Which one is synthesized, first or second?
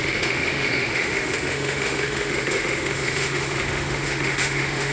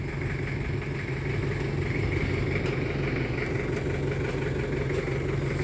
first